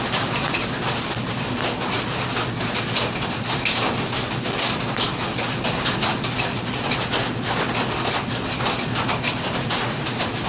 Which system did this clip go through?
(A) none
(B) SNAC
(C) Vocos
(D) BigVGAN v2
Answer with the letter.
A